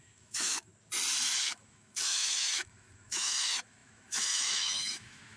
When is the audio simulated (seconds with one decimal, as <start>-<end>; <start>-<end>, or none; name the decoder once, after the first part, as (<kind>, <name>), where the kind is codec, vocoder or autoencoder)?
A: 0.0-0.7 (autoencoder, DAC-VAE); 1.4-5.4